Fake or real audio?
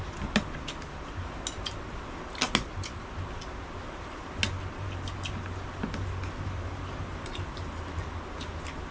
real